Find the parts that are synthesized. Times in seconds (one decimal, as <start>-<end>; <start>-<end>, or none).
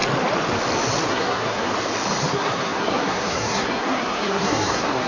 1.1-1.7; 2.2-5.1